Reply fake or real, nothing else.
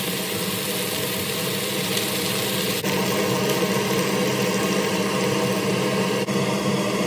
real